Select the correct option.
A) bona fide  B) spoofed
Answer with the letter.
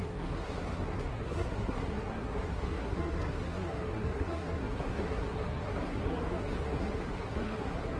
B